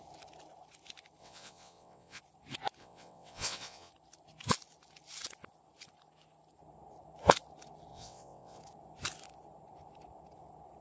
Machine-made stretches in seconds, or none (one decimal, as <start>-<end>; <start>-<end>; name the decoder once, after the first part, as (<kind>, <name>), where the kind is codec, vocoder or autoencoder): 1.2-2.2 (vocoder, WaveNeXt); 2.8-3.9; 7.9-8.6